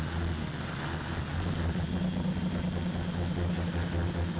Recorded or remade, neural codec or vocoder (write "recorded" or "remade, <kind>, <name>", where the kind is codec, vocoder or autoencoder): recorded